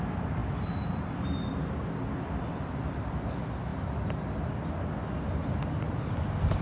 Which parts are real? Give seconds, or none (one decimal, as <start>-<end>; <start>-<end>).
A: 0.0-6.6